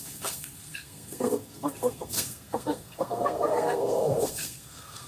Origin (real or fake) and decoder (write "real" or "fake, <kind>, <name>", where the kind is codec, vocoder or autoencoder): fake, codec, SNAC